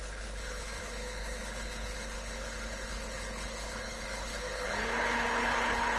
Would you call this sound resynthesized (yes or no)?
yes